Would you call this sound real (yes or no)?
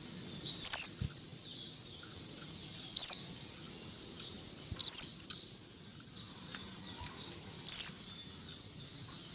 yes